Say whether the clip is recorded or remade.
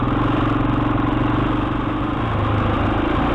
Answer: recorded